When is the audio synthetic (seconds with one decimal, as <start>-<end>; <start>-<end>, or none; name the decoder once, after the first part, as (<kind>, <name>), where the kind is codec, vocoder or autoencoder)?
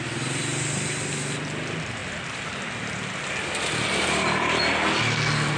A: 2.0-4.6 (vocoder, BigVGAN v2)